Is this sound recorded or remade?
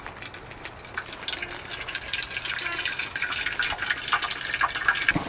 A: recorded